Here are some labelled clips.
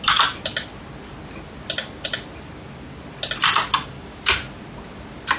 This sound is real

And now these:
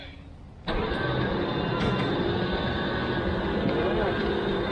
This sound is real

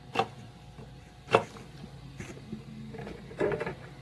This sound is real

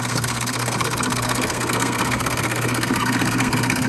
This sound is fake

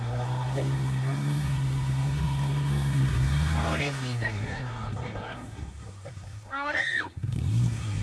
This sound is fake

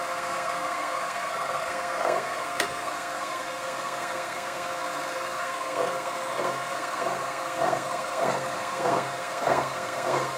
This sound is fake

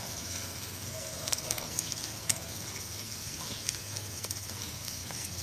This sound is fake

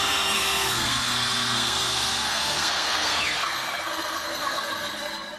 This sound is fake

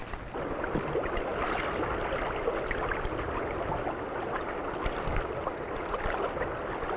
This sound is real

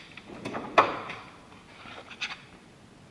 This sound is real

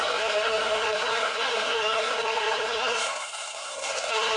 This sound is fake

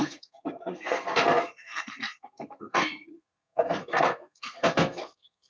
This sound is fake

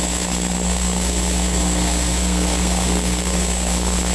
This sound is fake